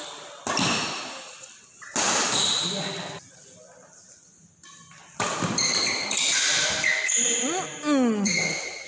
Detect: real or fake real